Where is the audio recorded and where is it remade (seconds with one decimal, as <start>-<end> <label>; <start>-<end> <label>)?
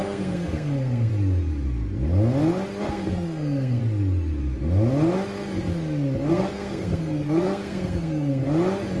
0.0-1.1 remade; 1.1-2.9 recorded; 2.9-3.8 remade; 3.8-6.3 recorded; 6.3-8.4 remade; 8.4-9.0 recorded